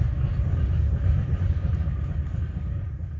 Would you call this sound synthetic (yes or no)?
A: no